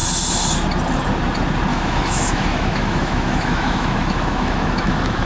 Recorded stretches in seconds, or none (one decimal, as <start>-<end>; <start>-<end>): 0.0-1.7